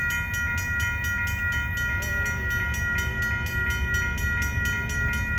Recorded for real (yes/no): yes